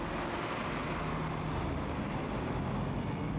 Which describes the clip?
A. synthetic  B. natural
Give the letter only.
B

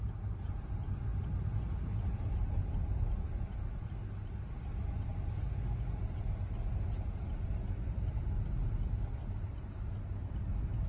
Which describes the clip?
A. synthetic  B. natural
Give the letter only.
B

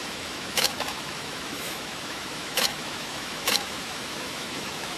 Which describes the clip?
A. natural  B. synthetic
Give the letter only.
B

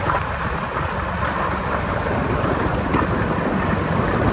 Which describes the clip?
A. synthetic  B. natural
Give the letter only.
B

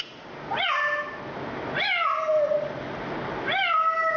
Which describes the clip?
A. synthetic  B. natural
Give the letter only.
B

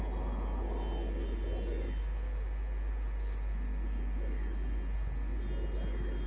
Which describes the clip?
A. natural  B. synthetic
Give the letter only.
A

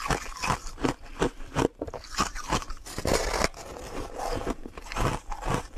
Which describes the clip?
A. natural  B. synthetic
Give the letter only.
A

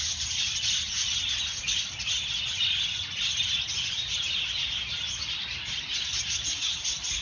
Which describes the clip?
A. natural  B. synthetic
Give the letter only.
A